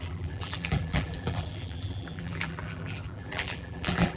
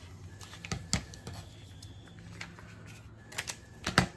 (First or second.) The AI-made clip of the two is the first